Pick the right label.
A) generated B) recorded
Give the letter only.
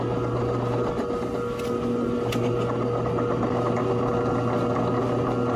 B